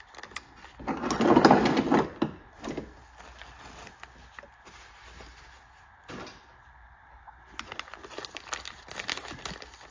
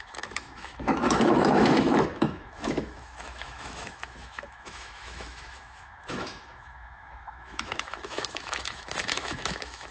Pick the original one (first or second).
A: first